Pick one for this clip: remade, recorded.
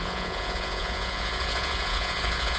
remade